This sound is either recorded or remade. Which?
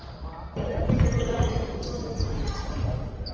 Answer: recorded